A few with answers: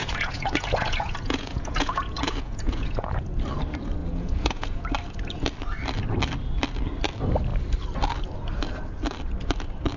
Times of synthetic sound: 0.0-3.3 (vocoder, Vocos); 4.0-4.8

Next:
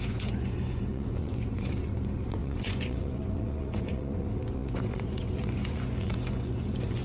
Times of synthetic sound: 0.0-7.0 (vocoder, Vocos)

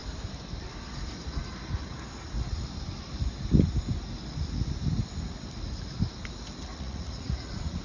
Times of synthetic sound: 6.7-7.8 (vocoder, Vocos)

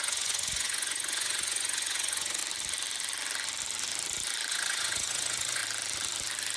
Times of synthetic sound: 0.0-2.4 (vocoder, Vocos); 4.5-5.6

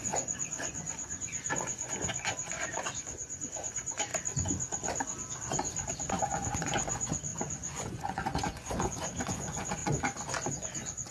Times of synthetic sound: 0.0-4.1 (vocoder, Vocos); 6.1-9.8; 10.5-11.1

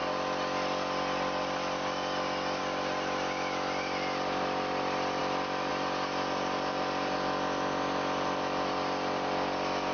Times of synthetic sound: none

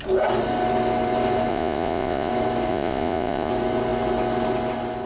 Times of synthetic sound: 1.5-2.3 (vocoder, Vocos); 2.7-3.5